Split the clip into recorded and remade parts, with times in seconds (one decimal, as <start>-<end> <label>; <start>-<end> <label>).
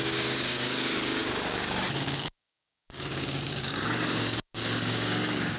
0.0-5.6 remade